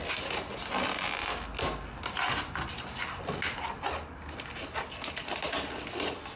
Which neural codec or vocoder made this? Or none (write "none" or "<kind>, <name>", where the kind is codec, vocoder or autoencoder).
none